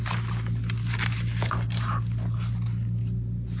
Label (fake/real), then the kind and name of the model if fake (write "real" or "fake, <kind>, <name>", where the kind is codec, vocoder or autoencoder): real